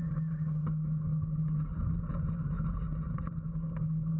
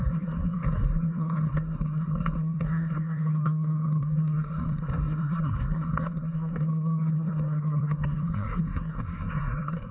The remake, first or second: second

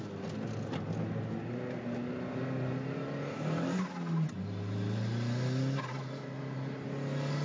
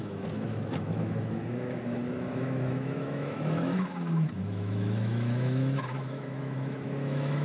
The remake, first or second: second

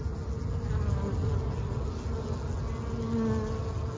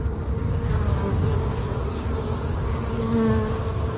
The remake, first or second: second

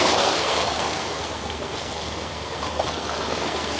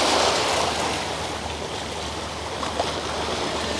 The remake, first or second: first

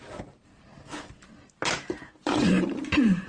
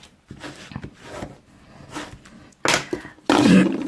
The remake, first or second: first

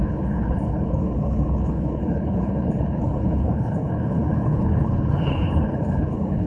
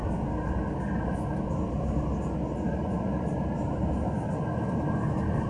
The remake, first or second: first